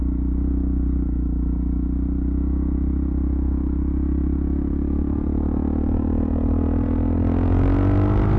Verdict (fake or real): real